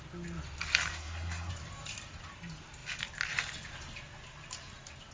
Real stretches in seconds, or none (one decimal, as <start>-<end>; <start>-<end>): 0.0-0.9; 1.5-5.1